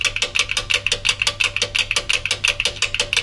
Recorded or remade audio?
recorded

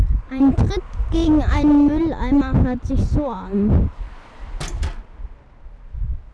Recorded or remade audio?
recorded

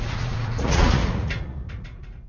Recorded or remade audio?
remade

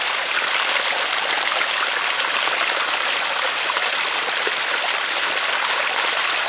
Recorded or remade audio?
recorded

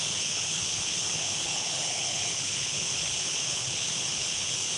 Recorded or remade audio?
remade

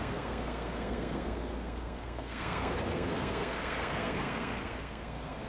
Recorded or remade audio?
remade